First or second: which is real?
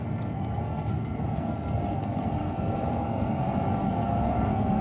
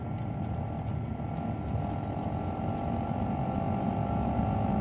second